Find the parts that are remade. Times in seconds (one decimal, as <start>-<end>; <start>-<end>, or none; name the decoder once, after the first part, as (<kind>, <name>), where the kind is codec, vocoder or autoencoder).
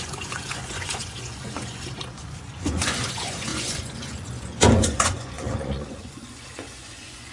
0.0-7.3 (vocoder, Vocos)